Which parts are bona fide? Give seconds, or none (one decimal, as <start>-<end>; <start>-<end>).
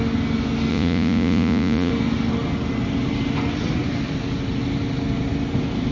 0.0-0.7; 1.9-5.9